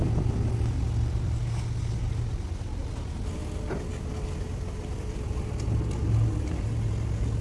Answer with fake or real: real